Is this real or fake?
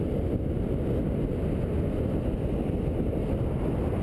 real